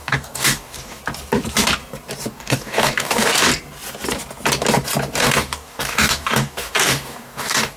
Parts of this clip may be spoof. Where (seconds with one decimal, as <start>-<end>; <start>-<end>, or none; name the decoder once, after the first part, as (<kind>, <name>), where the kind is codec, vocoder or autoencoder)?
0.0-1.0 (codec, DAC); 2.3-3.5; 5.2-7.8